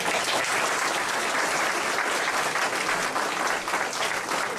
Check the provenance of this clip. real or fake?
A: real